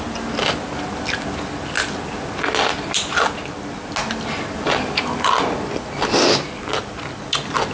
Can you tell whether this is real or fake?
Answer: real